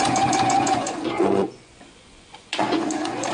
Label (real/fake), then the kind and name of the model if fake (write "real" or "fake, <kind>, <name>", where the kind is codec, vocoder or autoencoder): fake, vocoder, Vocos